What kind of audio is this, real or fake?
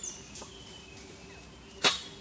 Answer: real